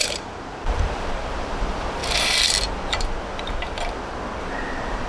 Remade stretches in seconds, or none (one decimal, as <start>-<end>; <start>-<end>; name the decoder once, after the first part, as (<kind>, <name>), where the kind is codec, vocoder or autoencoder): 0.0-2.0 (vocoder, BigVGAN v2); 4.4-5.1